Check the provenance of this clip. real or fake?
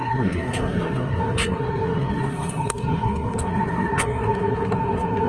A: fake